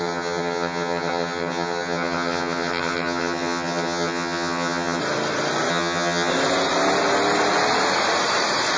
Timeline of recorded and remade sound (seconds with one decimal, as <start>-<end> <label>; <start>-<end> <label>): 0.0-5.0 remade; 5.0-5.7 recorded; 5.7-6.3 remade; 6.3-8.8 recorded

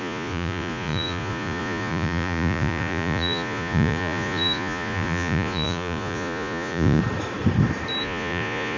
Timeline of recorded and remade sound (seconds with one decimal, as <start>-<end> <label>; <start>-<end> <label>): 0.0-7.0 remade; 7.0-8.0 recorded; 8.0-8.8 remade

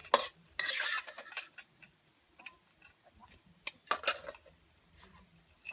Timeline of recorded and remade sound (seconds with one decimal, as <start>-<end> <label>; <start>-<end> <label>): 0.0-1.0 recorded; 1.0-3.2 remade; 3.2-4.7 recorded; 4.7-5.7 remade

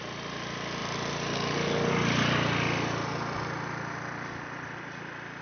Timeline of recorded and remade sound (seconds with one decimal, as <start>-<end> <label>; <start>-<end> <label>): 0.0-5.4 recorded

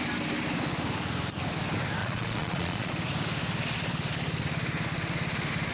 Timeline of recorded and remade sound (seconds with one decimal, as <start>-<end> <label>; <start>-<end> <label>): 0.0-2.0 recorded; 2.0-2.9 remade; 2.9-5.7 recorded

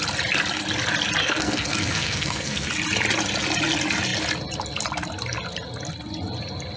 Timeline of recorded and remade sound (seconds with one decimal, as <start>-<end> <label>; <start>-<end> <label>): 0.0-1.2 recorded; 1.2-2.7 remade; 2.7-6.8 recorded

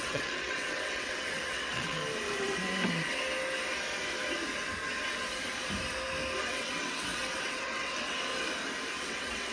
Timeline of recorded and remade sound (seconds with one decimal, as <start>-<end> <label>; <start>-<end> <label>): 0.0-2.0 remade; 2.0-6.4 recorded; 6.4-8.3 remade; 8.3-9.0 recorded; 9.0-9.5 remade